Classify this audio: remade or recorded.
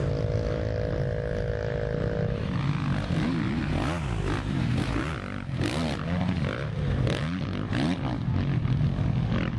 recorded